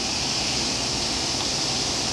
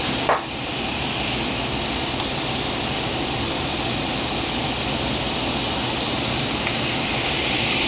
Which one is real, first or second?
first